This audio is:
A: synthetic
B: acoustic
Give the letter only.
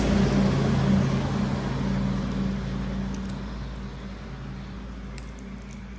B